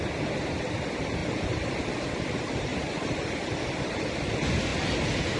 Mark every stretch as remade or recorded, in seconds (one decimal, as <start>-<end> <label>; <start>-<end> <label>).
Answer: 0.0-1.2 recorded; 1.2-1.8 remade; 1.8-2.7 recorded; 2.7-4.0 remade; 4.0-5.4 recorded